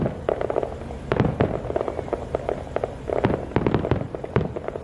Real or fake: real